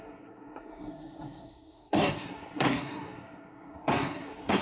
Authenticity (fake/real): fake